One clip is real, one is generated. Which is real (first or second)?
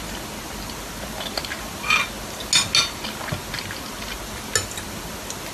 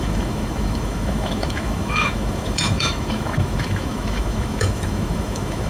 first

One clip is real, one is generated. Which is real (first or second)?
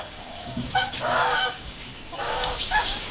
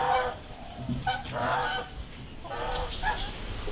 second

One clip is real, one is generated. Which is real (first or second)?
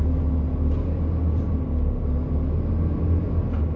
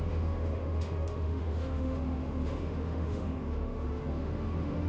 first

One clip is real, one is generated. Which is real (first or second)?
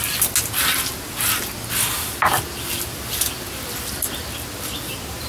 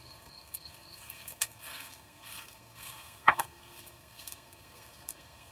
first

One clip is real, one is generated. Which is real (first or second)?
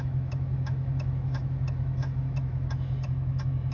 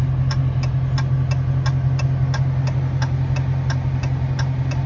second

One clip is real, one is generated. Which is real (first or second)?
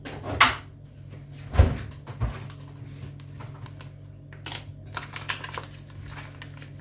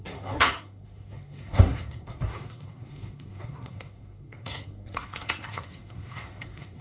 first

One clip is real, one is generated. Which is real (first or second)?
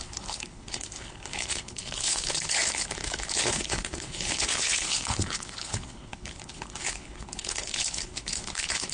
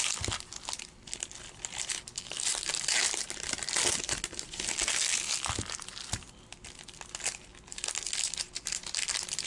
second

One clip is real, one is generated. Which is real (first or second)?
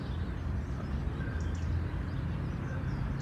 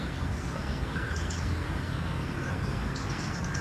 first